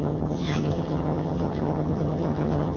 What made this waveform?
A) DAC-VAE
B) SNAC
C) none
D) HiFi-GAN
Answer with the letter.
D